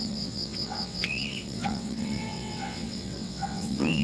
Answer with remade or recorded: remade